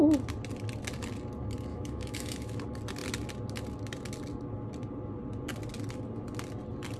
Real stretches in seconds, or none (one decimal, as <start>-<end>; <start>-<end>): 0.0-1.7; 2.6-7.0